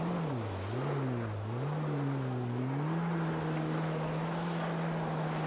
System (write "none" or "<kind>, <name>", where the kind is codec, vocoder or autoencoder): none